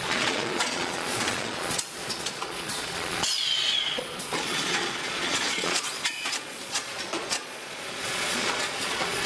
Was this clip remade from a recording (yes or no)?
yes